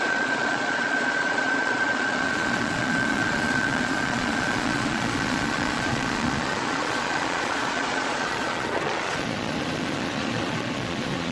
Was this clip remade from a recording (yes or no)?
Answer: yes